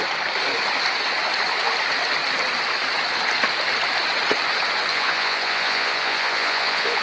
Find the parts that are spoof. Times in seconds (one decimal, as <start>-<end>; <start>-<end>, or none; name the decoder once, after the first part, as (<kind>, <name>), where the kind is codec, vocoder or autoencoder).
4.9-7.0 (vocoder, Vocos)